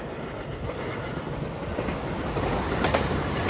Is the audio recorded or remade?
recorded